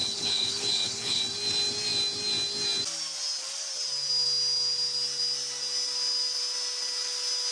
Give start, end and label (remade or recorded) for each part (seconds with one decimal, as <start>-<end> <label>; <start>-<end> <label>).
0.0-1.2 remade; 1.2-7.5 recorded